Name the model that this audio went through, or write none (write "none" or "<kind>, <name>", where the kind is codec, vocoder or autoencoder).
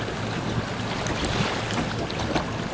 none